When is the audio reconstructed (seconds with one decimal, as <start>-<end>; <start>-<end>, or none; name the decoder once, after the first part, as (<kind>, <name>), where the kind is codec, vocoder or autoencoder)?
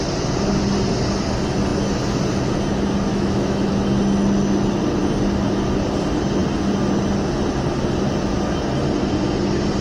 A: 3.1-3.7 (autoencoder, DAC-VAE)